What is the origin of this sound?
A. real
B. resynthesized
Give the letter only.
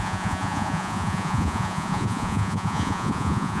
B